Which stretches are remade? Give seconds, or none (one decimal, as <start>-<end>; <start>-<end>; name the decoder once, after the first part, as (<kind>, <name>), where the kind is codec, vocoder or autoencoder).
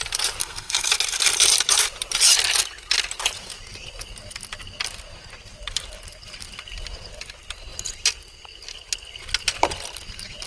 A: 0.4-0.9 (codec, SNAC)